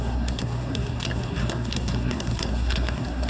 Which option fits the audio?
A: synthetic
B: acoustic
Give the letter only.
A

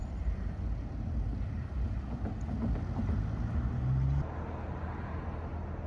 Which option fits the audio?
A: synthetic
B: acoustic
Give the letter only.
B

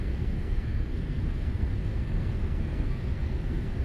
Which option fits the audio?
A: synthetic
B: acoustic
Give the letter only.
A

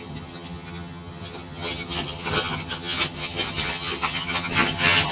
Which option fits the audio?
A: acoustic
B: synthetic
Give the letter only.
B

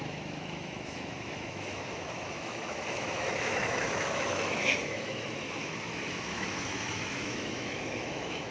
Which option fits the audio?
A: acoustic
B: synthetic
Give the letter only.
B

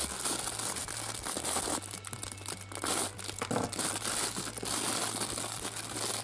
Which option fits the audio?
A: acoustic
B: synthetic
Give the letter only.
A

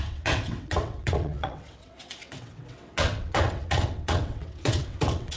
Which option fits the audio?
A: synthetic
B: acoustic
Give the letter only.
A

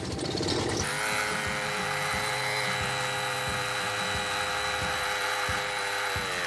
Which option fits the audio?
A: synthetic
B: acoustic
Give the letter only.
B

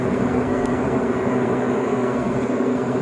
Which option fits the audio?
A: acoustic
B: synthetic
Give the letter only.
B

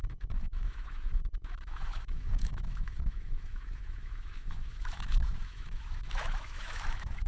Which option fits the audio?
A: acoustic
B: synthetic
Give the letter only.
B